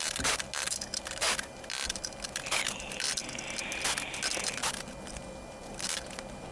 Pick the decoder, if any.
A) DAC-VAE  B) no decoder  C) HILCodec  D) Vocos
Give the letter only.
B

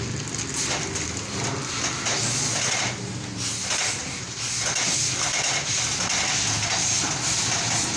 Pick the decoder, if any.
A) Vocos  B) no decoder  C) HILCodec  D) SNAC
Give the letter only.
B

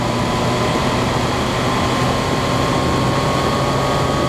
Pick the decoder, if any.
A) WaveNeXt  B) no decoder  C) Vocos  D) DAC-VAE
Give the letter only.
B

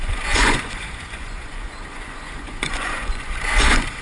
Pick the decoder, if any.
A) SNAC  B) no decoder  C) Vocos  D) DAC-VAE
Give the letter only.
C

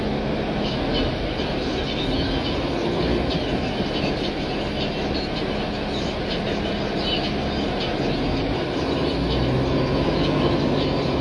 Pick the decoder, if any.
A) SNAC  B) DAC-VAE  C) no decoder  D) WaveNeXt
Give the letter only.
C